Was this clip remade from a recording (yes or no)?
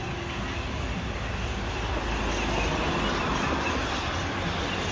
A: no